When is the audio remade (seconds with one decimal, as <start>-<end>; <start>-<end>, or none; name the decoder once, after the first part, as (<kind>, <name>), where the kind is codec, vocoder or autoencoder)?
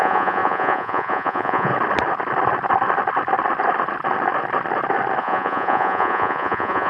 0.0-1.7 (vocoder, Vocos); 5.2-6.9